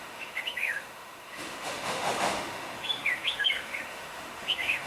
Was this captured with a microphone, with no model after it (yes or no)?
no